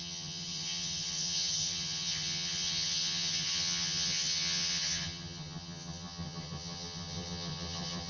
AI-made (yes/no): yes